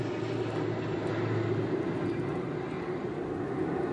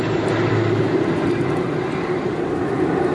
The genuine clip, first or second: first